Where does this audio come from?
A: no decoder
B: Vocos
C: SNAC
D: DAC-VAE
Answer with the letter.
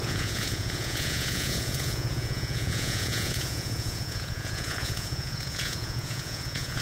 B